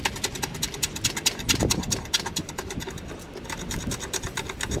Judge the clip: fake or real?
real